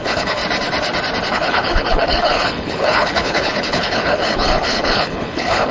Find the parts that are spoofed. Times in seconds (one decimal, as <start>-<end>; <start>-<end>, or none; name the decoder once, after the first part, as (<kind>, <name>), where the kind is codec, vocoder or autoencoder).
0.0-0.4 (codec, HILCodec); 1.3-5.7